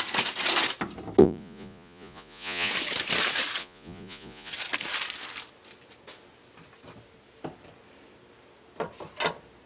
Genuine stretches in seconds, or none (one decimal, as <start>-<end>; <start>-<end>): 0.0-1.2; 2.7-3.6; 4.5-9.7